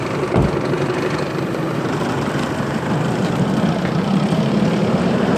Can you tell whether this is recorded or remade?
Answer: remade